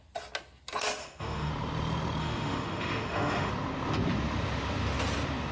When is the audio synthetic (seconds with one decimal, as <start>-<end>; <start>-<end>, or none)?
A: 1.0-1.5; 2.2-3.5